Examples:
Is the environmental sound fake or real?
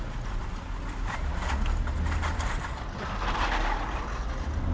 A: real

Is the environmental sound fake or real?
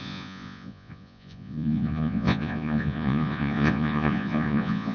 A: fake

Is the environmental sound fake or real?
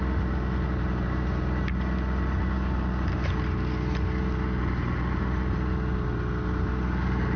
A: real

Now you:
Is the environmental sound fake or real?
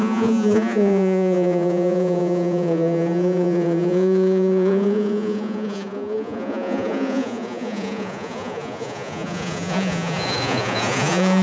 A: fake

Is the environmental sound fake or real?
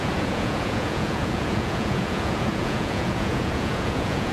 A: fake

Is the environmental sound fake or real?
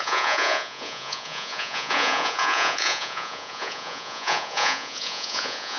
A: fake